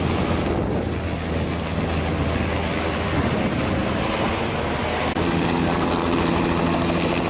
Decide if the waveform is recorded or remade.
recorded